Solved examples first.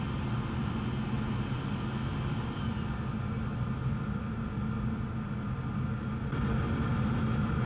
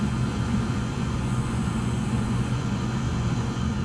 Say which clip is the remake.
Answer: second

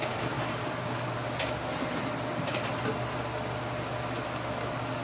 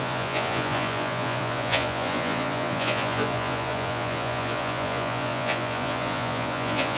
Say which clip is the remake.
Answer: second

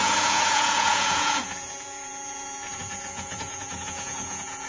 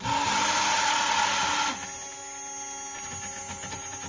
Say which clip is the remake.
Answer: first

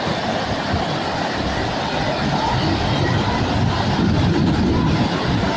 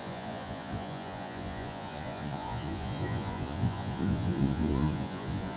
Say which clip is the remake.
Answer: second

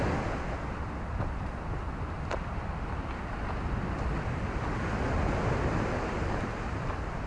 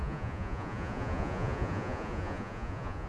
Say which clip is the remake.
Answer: second